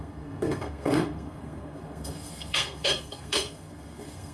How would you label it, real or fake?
fake